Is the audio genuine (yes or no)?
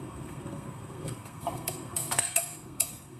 no